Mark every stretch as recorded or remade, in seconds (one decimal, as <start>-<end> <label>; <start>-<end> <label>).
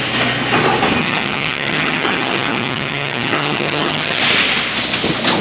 0.0-1.0 recorded; 1.0-4.2 remade; 4.2-5.4 recorded